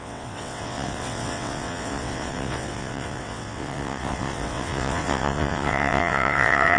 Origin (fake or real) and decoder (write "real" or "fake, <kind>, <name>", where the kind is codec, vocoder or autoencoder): fake, vocoder, WaveNeXt